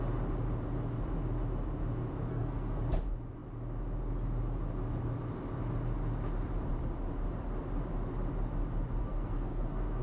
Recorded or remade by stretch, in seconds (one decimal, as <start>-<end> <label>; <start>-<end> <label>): 0.0-2.3 recorded; 2.3-2.8 remade; 2.8-9.0 recorded; 9.0-10.0 remade